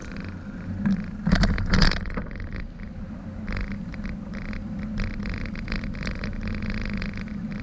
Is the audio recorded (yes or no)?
yes